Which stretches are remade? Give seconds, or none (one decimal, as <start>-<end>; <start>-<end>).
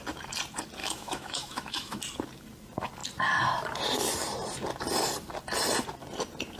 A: 0.8-2.0